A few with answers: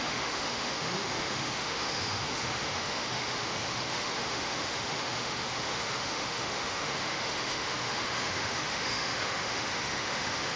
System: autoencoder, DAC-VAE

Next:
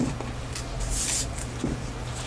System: none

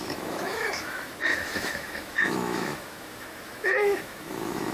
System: autoencoder, DAC-VAE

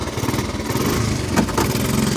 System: none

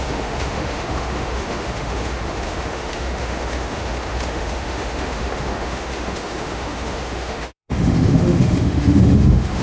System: autoencoder, DAC-VAE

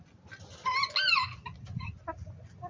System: none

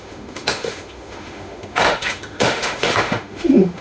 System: autoencoder, DAC-VAE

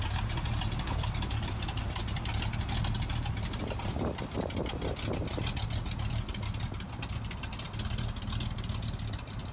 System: none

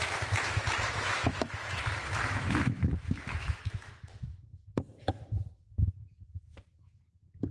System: autoencoder, DAC-VAE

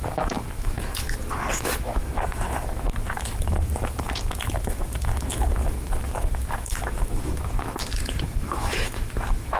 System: autoencoder, DAC-VAE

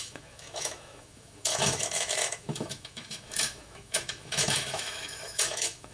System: autoencoder, DAC-VAE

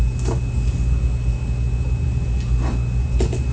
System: none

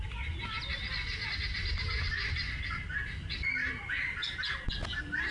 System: none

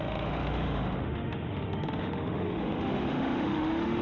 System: autoencoder, DAC-VAE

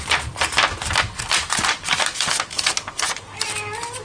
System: none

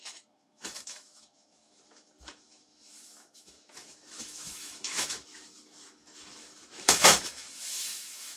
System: autoencoder, DAC-VAE